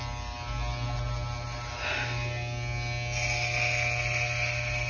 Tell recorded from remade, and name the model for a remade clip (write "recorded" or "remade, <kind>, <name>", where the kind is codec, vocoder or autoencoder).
recorded